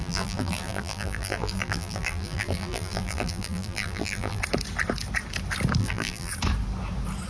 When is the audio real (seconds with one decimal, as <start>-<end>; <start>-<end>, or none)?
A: 4.4-5.8; 6.3-7.3